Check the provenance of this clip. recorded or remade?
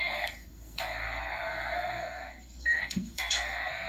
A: remade